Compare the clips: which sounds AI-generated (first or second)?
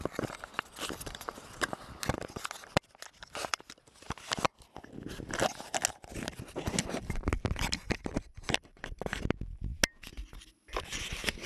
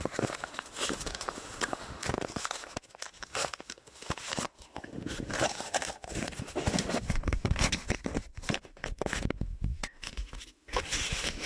second